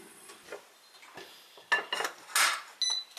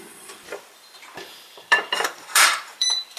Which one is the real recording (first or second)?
first